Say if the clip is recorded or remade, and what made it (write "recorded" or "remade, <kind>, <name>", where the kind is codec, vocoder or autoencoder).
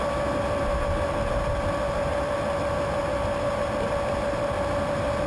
recorded